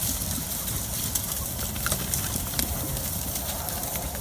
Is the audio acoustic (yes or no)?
yes